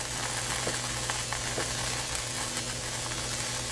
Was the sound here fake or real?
real